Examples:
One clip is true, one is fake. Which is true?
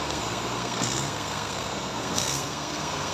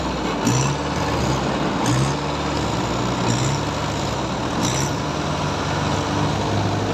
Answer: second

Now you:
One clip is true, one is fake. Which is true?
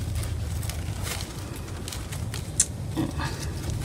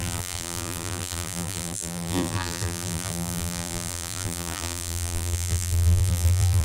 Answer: first